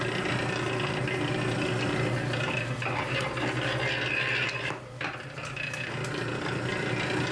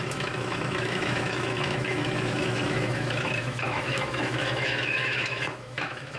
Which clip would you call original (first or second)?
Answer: first